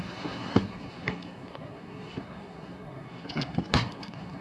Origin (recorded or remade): remade